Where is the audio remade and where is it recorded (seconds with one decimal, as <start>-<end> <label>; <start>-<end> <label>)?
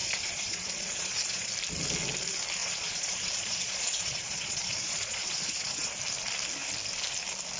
0.0-1.5 remade; 1.5-2.6 recorded; 2.6-5.9 remade; 5.9-7.6 recorded